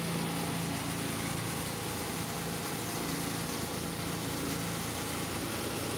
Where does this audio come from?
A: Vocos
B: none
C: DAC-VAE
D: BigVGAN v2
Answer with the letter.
B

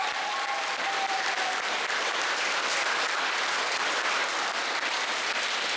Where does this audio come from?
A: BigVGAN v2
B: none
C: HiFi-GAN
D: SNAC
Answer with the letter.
A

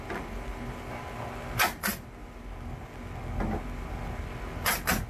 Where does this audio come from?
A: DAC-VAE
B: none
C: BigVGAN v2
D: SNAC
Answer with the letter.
B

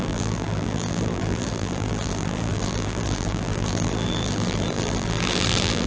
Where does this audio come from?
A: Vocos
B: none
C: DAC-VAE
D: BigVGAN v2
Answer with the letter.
D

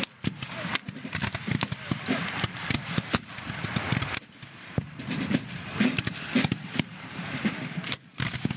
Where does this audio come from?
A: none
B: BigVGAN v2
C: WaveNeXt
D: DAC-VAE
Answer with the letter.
A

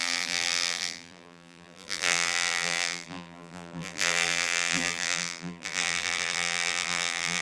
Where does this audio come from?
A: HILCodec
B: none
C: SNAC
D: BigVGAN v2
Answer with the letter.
D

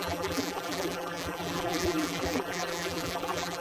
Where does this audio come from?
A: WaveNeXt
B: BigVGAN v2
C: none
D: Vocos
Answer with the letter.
B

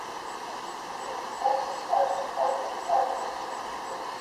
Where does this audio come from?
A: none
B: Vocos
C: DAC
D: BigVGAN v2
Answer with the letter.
D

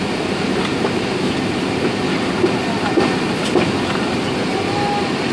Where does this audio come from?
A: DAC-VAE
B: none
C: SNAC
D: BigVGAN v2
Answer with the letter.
B